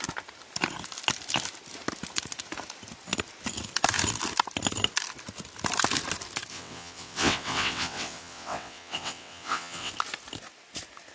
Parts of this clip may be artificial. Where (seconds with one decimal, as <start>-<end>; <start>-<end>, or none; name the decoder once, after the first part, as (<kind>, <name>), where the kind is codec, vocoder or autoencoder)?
6.5-9.9 (vocoder, WaveNeXt)